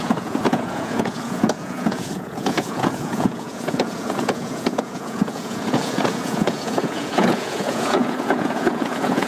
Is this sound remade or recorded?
remade